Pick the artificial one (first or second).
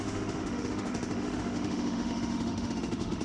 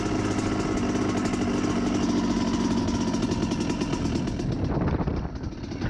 first